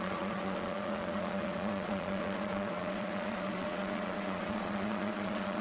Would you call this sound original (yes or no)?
no